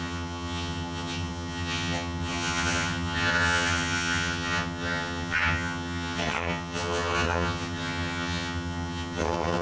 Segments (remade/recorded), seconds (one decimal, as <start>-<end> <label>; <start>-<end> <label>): 0.0-9.6 remade